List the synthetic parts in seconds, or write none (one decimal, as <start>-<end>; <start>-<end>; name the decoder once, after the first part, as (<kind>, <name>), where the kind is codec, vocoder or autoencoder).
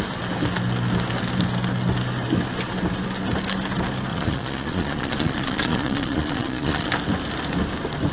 4.1-6.9 (vocoder, Vocos)